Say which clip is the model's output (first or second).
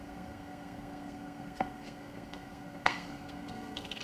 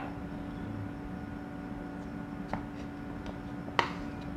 first